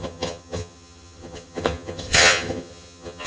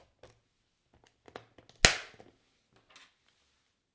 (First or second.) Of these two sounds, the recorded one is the second